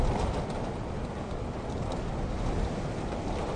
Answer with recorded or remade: recorded